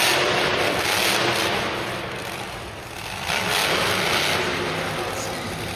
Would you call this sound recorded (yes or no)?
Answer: no